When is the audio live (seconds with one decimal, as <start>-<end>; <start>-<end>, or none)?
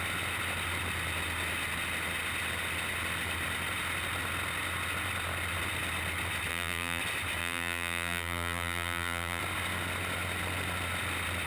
0.0-6.5; 7.0-7.4; 9.4-11.5